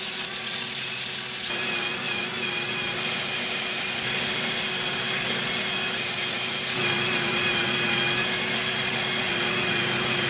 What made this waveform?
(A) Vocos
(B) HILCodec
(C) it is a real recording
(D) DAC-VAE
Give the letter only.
C